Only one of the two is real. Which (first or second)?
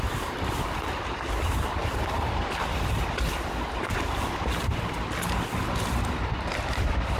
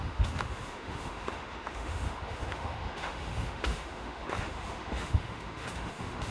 first